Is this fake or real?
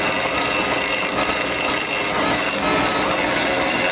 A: real